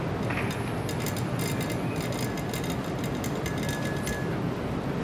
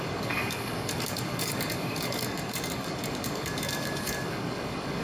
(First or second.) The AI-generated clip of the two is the second